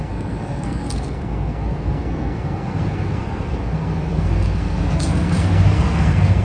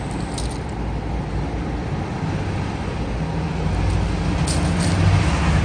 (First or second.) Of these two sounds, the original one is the second